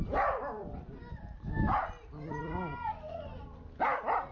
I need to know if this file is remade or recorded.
recorded